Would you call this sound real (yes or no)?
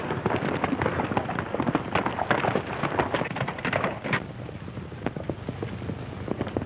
yes